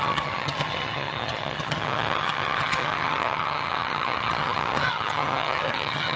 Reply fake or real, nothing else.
fake